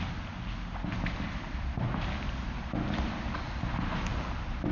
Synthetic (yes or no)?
no